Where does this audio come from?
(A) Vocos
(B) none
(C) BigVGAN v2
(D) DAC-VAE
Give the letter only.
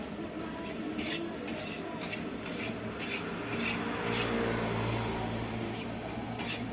B